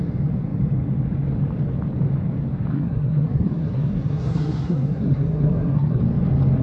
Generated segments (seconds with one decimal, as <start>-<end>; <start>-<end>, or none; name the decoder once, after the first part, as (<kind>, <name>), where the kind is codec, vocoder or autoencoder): 2.7-6.0 (codec, SNAC)